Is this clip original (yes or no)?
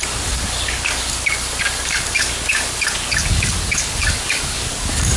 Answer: no